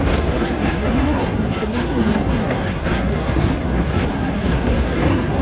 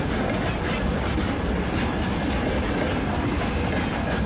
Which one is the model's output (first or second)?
first